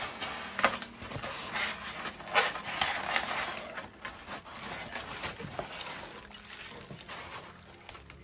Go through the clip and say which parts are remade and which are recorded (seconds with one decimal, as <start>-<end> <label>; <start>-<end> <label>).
0.0-8.2 recorded